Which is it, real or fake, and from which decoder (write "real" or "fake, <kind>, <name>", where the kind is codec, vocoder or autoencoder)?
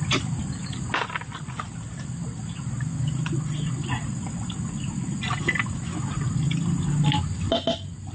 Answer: real